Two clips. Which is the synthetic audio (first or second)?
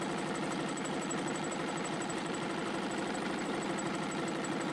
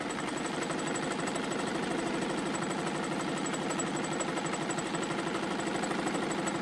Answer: first